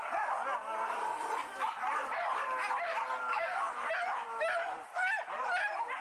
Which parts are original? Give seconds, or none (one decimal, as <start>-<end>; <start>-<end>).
0.0-3.3; 3.9-6.0